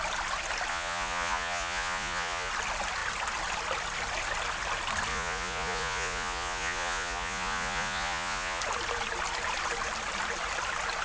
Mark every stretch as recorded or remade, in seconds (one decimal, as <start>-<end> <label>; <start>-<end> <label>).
0.0-0.7 recorded; 0.7-2.5 remade; 2.5-5.1 recorded; 5.1-8.6 remade; 8.6-11.0 recorded